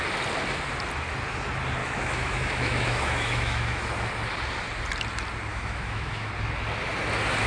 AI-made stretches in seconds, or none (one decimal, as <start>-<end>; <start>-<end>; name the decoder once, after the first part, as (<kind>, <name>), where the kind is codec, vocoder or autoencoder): 1.8-4.1 (autoencoder, DAC-VAE); 5.5-6.3